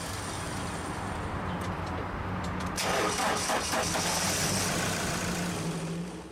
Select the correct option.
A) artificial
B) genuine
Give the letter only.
B